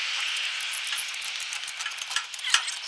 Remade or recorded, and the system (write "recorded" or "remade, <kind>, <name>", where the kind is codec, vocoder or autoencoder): recorded